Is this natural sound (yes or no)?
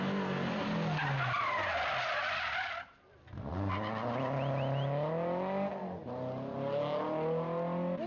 yes